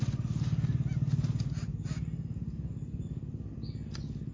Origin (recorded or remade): recorded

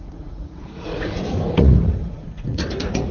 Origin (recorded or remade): remade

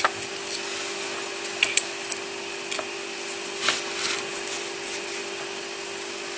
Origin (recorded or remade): recorded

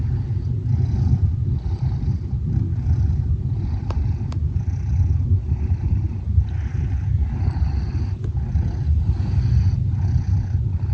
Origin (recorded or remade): recorded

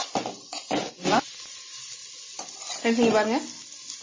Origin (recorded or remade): recorded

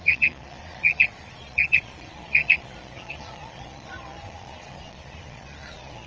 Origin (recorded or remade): remade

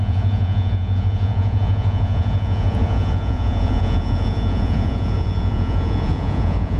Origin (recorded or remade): remade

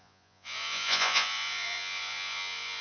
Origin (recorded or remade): remade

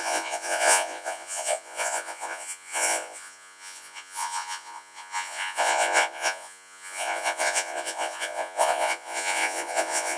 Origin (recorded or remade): remade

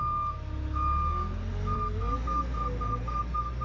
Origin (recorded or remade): recorded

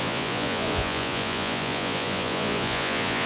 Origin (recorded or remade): remade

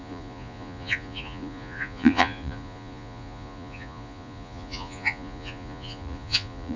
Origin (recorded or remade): remade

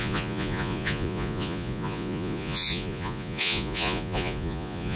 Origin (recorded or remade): remade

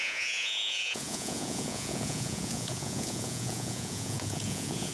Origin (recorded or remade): remade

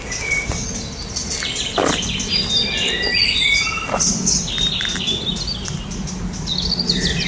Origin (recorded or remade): recorded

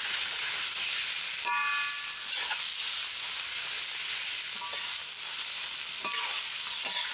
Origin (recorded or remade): recorded